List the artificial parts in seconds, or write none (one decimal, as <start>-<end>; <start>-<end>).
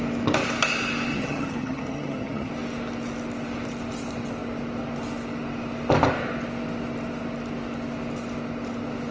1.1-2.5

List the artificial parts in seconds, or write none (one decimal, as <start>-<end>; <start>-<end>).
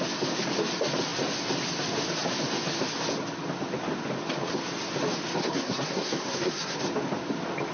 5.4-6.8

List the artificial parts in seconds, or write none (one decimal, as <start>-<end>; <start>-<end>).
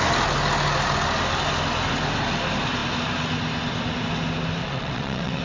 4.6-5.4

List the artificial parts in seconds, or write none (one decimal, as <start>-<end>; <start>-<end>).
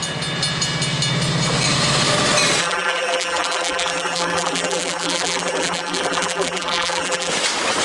2.6-7.3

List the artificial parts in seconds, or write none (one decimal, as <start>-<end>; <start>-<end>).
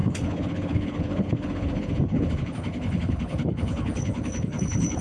0.0-5.0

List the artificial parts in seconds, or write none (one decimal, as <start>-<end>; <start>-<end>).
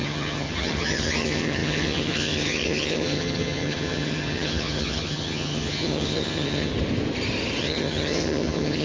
0.0-6.7; 7.6-8.8